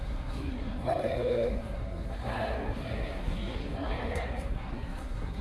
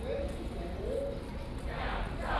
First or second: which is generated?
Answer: first